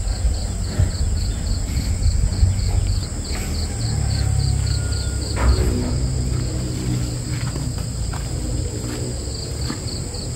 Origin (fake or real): real